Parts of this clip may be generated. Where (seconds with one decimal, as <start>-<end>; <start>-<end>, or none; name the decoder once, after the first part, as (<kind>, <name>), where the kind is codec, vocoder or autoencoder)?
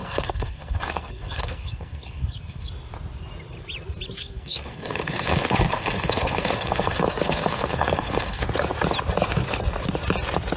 0.0-2.7 (codec, SNAC); 4.2-8.5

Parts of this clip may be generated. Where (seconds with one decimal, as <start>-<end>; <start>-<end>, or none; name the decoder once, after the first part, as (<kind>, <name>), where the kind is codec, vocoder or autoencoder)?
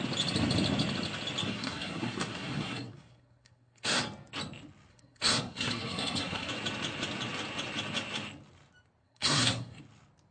1.4-4.0 (codec, SNAC); 4.9-6.5; 9.0-9.8